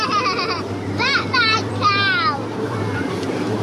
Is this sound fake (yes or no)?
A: yes